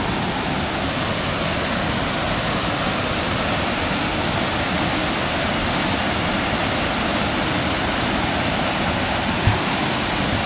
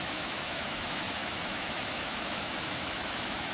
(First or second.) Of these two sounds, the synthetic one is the second